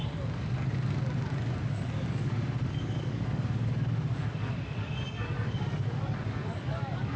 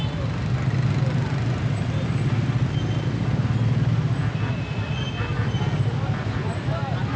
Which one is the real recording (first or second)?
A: second